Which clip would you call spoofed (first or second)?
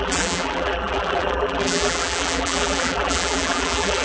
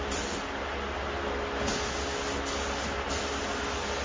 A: first